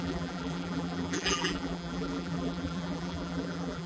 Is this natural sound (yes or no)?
no